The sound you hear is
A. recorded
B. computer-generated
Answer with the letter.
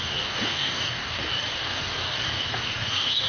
B